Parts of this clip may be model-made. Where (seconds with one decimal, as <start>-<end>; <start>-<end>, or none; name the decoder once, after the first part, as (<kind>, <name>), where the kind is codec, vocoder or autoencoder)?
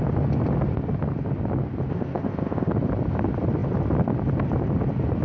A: 1.9-2.7 (codec, ZipCodec)